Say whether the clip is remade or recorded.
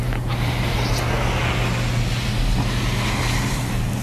remade